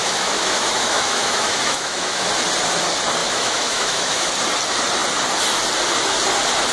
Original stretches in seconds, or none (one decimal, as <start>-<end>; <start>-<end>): 2.3-3.2; 4.3-6.7